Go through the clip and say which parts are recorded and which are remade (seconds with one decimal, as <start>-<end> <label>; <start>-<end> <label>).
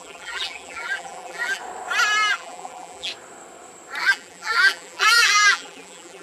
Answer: 0.0-1.6 remade; 1.6-2.3 recorded; 2.3-3.1 remade; 3.1-4.0 recorded; 4.0-6.2 remade